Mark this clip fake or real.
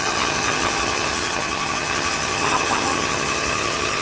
fake